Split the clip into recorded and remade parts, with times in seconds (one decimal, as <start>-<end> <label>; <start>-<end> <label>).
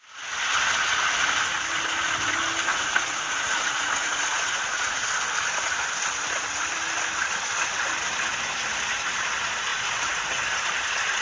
0.0-2.7 recorded; 2.7-5.1 remade; 5.1-9.7 recorded; 9.7-10.4 remade; 10.4-11.2 recorded